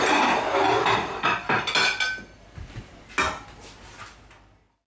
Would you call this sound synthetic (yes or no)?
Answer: no